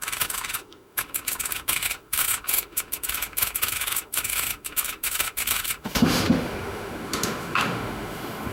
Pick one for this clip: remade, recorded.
remade